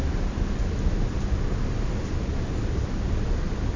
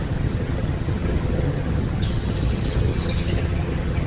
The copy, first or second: second